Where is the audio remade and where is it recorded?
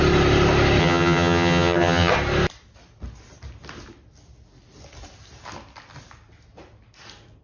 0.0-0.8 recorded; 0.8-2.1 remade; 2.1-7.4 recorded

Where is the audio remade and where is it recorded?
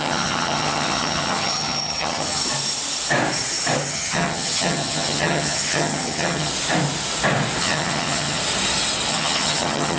0.0-2.4 remade; 2.4-3.9 recorded; 3.9-6.5 remade; 6.5-7.6 recorded; 7.6-8.4 remade; 8.4-9.1 recorded; 9.1-10.0 remade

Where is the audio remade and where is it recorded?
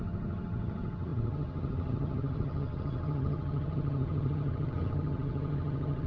0.0-6.1 remade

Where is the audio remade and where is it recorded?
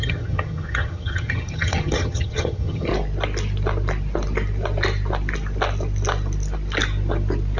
0.0-2.9 remade; 2.9-7.6 recorded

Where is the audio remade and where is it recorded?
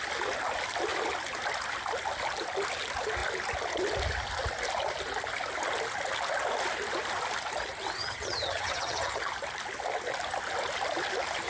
0.0-8.0 recorded; 8.0-9.2 remade; 9.2-11.5 recorded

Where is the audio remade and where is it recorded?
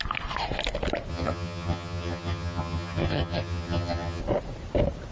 0.0-1.1 recorded; 1.1-4.2 remade; 4.2-5.1 recorded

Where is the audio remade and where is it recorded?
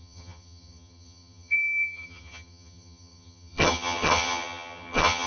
0.0-5.3 remade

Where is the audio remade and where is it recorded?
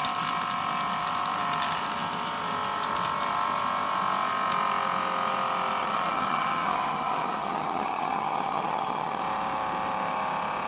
0.0-5.8 recorded; 5.8-9.2 remade; 9.2-10.7 recorded